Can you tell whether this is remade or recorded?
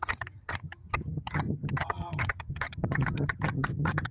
remade